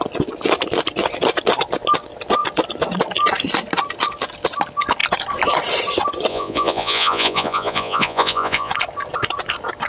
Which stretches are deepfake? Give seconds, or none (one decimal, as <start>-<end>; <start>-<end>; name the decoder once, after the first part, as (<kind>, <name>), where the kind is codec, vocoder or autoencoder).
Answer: 6.3-8.7 (vocoder, Vocos)

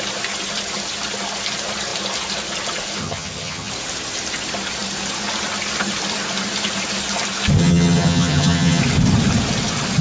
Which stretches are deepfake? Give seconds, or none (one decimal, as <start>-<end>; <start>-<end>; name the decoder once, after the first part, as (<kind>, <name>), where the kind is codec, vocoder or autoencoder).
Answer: 3.0-3.7 (vocoder, HiFi-GAN); 7.6-8.8

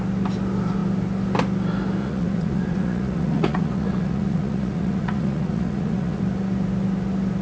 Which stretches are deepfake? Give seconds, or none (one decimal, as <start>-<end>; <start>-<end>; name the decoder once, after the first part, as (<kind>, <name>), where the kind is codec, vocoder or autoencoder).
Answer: 2.0-6.2 (vocoder, Vocos)

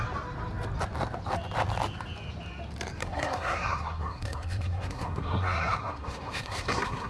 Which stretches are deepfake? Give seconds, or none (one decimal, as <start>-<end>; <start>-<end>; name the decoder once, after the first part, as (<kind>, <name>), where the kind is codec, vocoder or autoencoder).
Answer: 3.0-7.1 (codec, SNAC)